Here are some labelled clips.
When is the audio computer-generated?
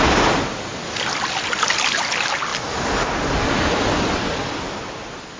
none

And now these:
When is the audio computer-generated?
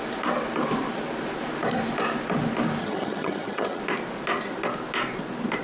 2.8-3.8 (vocoder, HiFi-GAN)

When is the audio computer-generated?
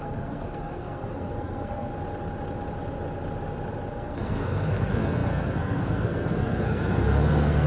0.0-1.9 (codec, SNAC); 3.9-7.7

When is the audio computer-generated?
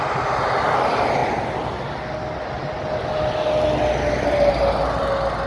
none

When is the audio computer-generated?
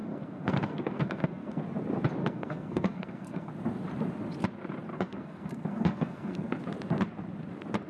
0.0-1.6 (codec, SNAC); 2.2-3.5; 4.9-6.6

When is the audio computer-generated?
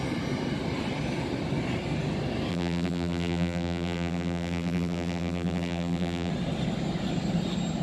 2.5-6.3 (vocoder, BigVGAN v2)